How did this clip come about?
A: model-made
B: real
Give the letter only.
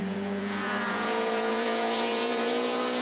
A